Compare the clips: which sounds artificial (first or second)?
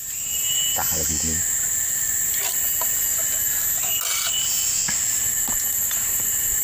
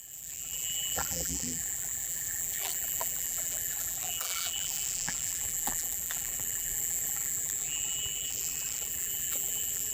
second